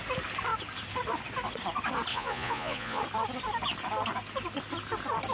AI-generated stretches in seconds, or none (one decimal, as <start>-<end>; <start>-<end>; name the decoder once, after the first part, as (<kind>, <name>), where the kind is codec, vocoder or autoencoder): 2.1-3.0 (vocoder, Vocos)